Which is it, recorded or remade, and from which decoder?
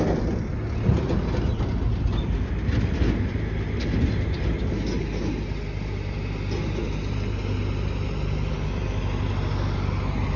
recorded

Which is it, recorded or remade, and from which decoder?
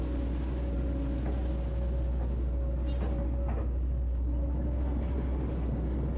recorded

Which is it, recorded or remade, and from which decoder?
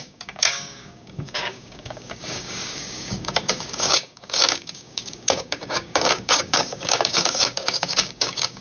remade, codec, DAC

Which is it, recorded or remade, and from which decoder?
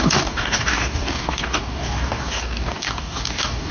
remade, codec, DAC